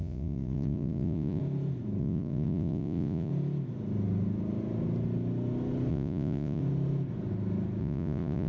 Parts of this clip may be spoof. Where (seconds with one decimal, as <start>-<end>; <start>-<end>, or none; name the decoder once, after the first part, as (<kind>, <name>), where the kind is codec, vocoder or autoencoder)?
0.0-1.4 (vocoder, Vocos); 2.0-3.3; 5.9-6.6; 7.8-8.5